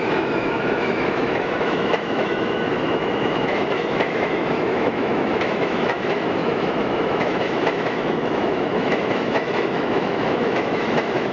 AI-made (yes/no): yes